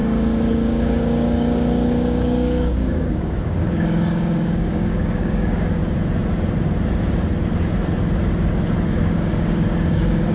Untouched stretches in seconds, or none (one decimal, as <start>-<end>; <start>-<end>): 5.8-9.0